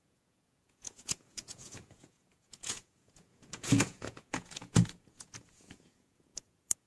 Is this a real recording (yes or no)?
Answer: no